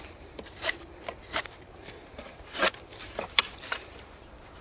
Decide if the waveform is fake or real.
fake